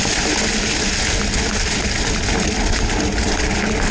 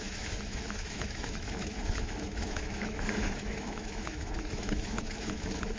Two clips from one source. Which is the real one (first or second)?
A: first